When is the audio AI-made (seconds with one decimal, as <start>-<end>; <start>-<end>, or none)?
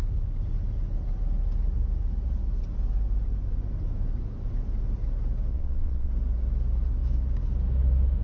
5.5-6.1